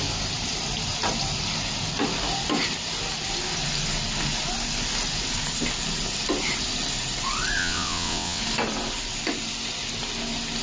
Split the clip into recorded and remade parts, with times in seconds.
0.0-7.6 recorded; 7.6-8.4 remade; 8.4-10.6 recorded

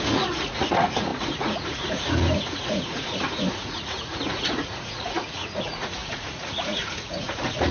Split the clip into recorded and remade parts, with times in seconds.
0.0-7.7 remade

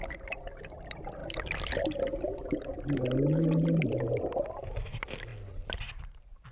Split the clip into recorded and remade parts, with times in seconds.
0.0-6.5 recorded

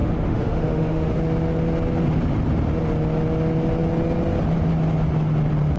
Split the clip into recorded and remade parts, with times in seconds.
0.0-1.2 remade; 1.2-5.8 recorded

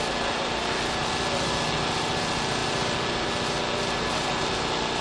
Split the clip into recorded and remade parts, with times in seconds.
0.0-5.0 recorded

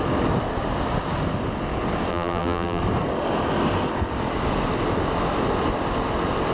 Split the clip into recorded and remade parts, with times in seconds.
0.0-2.1 recorded; 2.1-2.8 remade; 2.8-6.5 recorded

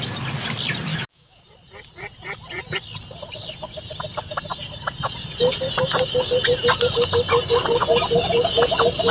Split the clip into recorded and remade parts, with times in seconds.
0.0-0.9 recorded; 0.9-1.4 remade; 1.4-9.1 recorded